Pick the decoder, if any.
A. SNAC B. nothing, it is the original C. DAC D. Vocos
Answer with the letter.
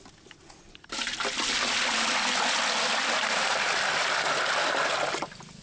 B